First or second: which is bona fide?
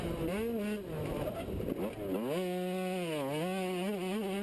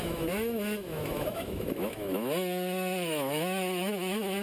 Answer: first